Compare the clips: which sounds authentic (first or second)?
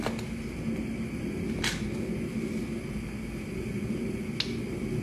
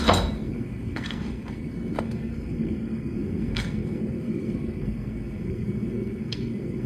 first